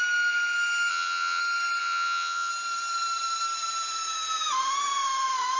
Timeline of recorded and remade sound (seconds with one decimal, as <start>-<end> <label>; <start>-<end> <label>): 0.0-0.9 recorded; 0.9-1.4 remade; 1.4-1.8 recorded; 1.8-2.5 remade; 2.5-5.6 recorded